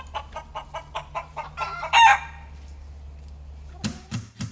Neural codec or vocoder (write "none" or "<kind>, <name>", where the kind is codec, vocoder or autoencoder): none